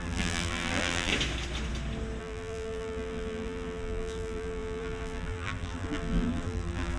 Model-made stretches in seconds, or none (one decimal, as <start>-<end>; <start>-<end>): 0.0-1.1; 2.2-7.0